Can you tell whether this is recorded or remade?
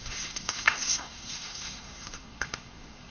remade